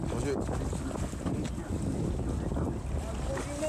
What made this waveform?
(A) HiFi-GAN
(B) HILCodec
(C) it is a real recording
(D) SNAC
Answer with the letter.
C